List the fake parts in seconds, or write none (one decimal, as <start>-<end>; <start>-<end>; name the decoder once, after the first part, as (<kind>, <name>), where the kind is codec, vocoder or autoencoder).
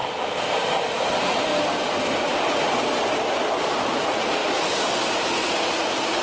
0.9-1.5 (vocoder, Vocos); 3.8-4.4; 5.4-6.2